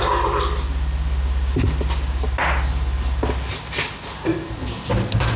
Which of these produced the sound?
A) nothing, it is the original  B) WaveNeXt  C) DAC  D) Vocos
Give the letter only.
A